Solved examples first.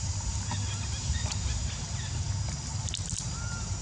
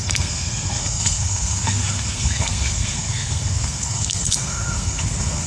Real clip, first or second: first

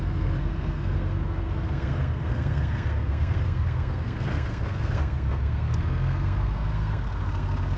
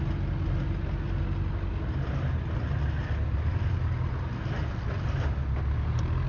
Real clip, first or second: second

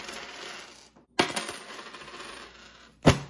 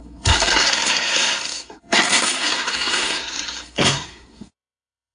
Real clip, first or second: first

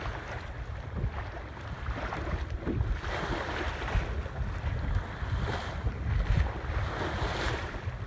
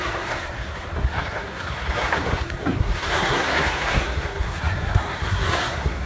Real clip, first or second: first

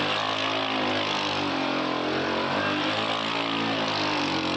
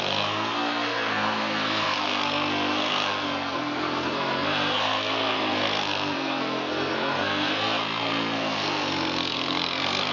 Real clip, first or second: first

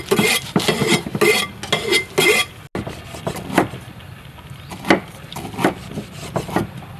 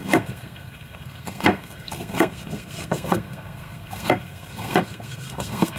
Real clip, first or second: first